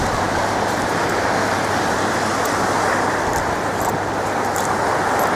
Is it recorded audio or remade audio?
recorded